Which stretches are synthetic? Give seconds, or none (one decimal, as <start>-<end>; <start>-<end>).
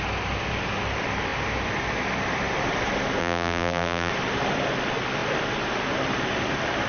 3.2-4.1